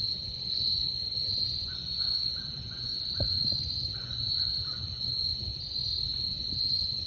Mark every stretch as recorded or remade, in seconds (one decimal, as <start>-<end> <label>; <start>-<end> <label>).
0.0-5.5 remade; 5.5-6.2 recorded; 6.2-7.1 remade